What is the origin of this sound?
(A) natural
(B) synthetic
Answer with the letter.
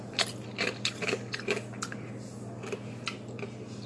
A